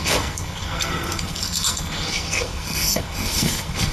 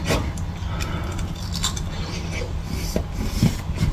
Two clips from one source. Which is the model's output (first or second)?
first